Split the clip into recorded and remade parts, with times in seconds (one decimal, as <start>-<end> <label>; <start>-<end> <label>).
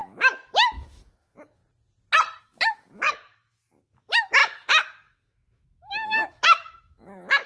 0.0-1.6 remade; 1.6-2.4 recorded; 2.4-7.5 remade